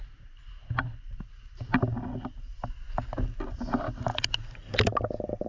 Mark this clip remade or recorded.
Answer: recorded